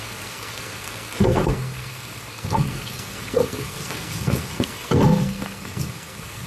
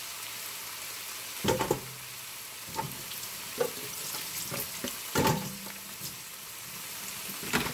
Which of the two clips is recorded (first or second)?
second